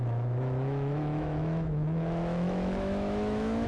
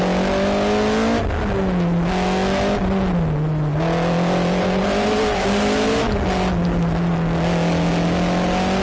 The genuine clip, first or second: second